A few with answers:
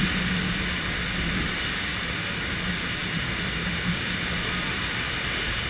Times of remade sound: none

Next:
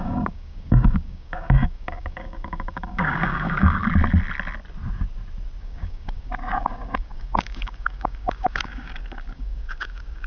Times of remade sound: 0.0-3.8 (codec, DAC); 5.6-10.3

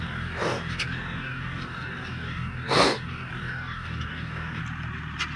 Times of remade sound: 0.0-4.6 (codec, DAC)

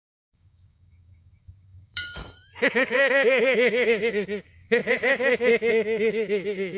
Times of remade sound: 0.0-4.8 (codec, DAC); 6.1-6.8

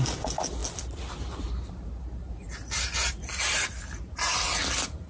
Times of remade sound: none